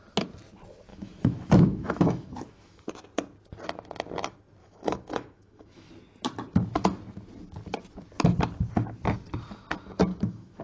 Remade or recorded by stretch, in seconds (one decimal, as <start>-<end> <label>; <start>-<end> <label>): 0.0-0.9 recorded; 0.9-2.9 remade; 2.9-4.6 recorded; 4.6-5.9 remade; 5.9-10.1 recorded; 10.1-10.6 remade

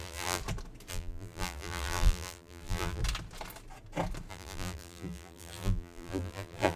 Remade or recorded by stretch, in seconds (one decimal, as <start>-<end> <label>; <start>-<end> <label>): 0.0-0.4 remade; 0.4-0.9 recorded; 0.9-3.0 remade; 3.0-4.3 recorded; 4.3-6.8 remade

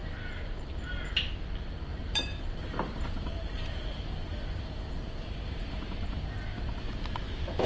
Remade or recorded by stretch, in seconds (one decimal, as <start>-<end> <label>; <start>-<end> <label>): 0.0-0.7 remade; 0.7-1.9 recorded; 1.9-5.8 remade; 5.8-7.7 recorded

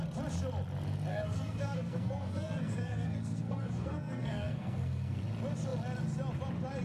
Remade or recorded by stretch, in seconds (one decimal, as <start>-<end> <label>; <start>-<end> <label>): 0.0-1.1 recorded; 1.1-5.2 remade; 5.2-6.8 recorded